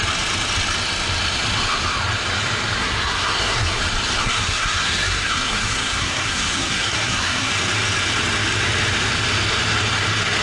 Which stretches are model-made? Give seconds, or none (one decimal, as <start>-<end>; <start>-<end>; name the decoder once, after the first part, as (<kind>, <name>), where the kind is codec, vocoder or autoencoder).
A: 2.8-3.8 (codec, SNAC); 4.2-7.5